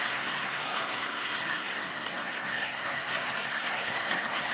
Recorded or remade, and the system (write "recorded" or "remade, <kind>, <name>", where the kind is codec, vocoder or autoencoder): remade, codec, SNAC